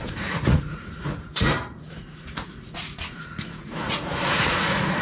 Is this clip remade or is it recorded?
remade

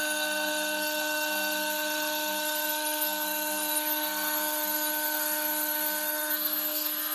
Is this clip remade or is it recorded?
remade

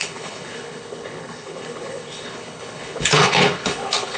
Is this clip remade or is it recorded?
remade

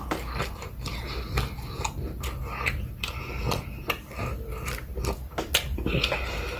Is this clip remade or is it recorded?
recorded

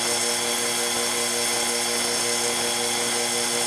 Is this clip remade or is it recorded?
recorded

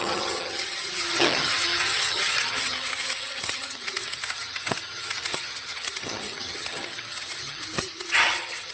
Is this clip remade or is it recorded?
remade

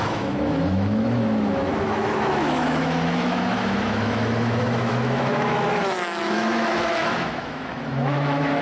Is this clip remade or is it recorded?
remade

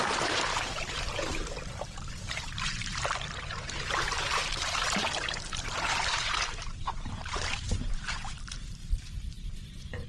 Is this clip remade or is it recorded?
remade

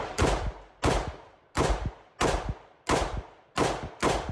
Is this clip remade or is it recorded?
recorded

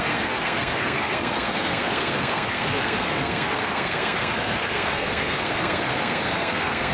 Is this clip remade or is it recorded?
remade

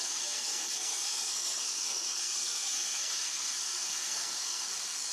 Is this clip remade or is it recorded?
remade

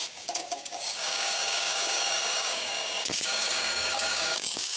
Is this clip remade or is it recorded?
remade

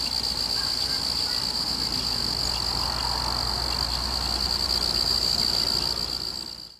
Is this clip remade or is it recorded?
recorded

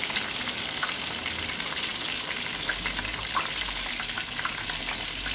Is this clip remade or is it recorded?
recorded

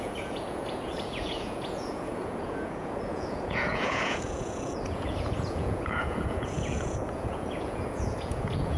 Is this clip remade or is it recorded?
remade